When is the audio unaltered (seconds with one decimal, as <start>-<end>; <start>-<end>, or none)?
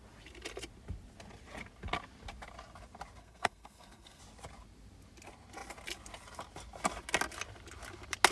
0.0-3.2; 4.2-8.3